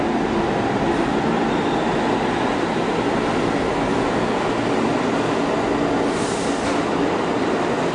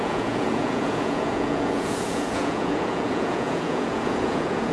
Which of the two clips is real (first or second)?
first